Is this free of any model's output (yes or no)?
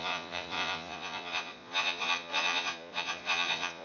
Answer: no